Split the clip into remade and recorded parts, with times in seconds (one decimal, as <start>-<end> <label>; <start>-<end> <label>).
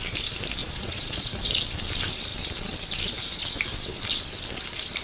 0.0-0.6 recorded; 0.6-1.5 remade; 1.5-5.0 recorded